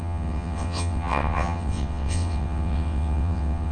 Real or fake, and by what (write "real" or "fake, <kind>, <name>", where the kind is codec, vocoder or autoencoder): fake, vocoder, WaveNeXt